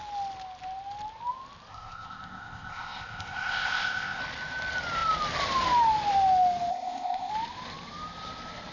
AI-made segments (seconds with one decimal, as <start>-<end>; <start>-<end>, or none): 1.7-4.2; 6.7-7.3